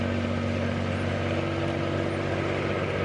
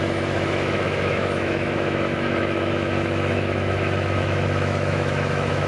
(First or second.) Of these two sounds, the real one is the first